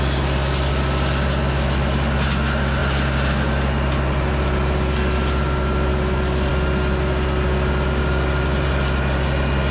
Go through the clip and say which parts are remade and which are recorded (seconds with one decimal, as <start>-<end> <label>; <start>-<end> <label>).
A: 0.0-9.7 recorded